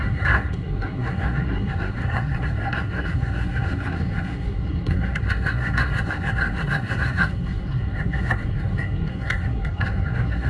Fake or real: fake